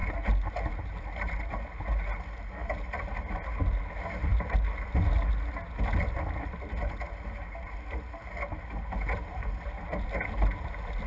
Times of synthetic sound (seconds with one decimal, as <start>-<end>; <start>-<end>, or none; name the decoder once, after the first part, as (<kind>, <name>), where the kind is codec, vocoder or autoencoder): none

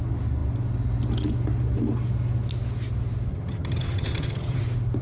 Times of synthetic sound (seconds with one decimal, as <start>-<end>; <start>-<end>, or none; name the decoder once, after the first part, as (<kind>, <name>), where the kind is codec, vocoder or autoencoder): 3.3-4.6 (vocoder, HiFi-GAN)